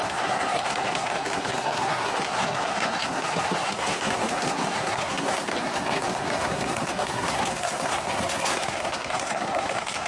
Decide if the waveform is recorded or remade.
remade